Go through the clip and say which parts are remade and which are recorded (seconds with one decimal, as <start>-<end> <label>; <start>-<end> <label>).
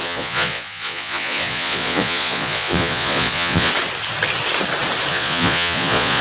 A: 0.0-3.7 remade; 3.7-5.1 recorded; 5.1-6.2 remade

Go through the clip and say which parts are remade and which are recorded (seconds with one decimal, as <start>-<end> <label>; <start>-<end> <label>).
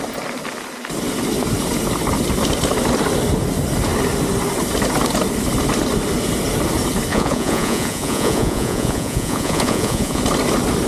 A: 0.0-7.1 recorded; 7.1-10.2 remade; 10.2-10.9 recorded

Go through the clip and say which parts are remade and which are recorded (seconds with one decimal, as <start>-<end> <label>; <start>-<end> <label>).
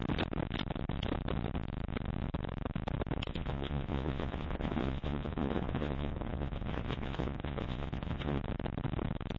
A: 0.0-3.3 recorded; 3.3-8.4 remade; 8.4-9.4 recorded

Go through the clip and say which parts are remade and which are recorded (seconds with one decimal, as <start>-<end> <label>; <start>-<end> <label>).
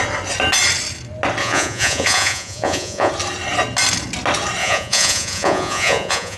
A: 0.0-1.4 recorded; 1.4-3.1 remade; 3.1-4.6 recorded; 4.6-6.4 remade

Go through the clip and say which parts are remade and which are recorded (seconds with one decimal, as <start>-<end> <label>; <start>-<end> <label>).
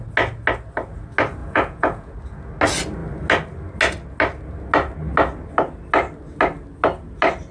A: 0.0-1.4 recorded; 1.4-2.1 remade; 2.1-7.5 recorded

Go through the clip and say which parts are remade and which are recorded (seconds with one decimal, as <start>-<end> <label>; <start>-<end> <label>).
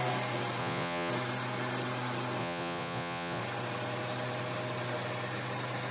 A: 0.0-0.6 recorded; 0.6-1.1 remade; 1.1-2.4 recorded; 2.4-3.4 remade; 3.4-5.9 recorded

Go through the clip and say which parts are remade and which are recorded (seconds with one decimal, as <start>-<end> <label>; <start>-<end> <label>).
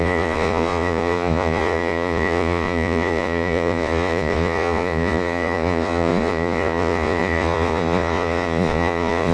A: 0.0-9.3 remade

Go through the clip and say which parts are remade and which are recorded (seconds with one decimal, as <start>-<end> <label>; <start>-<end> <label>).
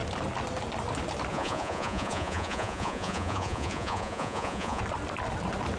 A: 0.0-1.3 recorded; 1.3-4.8 remade; 4.8-5.8 recorded